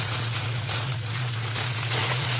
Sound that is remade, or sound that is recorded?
remade